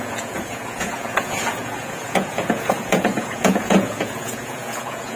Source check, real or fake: fake